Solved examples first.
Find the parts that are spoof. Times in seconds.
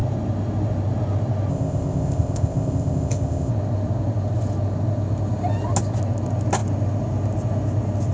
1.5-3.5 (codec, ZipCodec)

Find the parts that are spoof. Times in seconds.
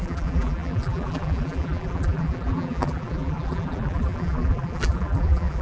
0.0-5.6 (vocoder, BigVGAN v2)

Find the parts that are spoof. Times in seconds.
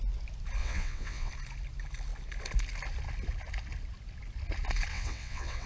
0.6-1.3 (vocoder, WaveNeXt); 4.9-5.7